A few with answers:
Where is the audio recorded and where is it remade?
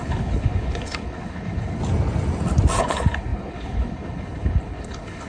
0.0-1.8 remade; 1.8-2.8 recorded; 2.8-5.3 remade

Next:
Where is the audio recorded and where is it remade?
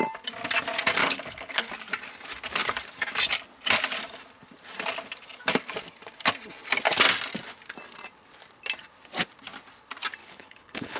0.0-1.0 recorded; 1.0-1.7 remade; 1.7-10.2 recorded; 10.2-11.0 remade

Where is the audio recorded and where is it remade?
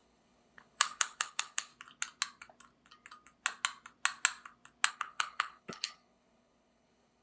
0.0-1.7 remade; 1.7-4.9 recorded; 4.9-7.2 remade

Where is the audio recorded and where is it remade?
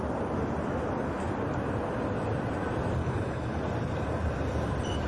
0.0-3.0 recorded; 3.0-3.6 remade; 3.6-5.1 recorded